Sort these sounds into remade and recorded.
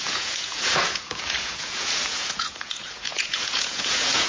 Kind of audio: remade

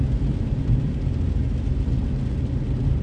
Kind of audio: recorded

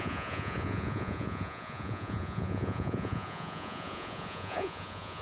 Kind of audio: remade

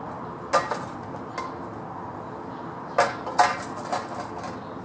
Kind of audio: recorded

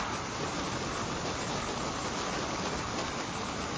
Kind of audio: recorded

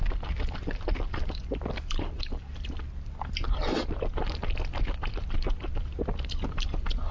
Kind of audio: recorded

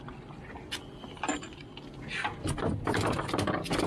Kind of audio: recorded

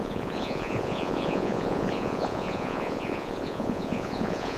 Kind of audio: remade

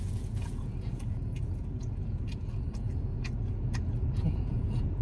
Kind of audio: remade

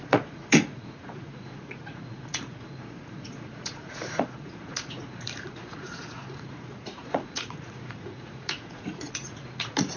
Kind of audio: remade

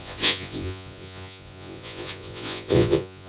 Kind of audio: remade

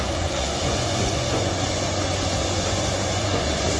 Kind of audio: remade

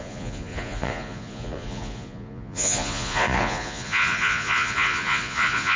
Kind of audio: remade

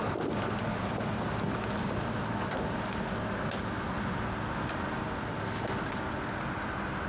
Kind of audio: recorded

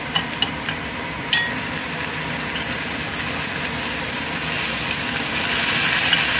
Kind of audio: recorded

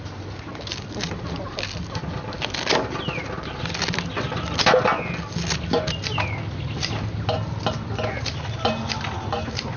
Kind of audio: recorded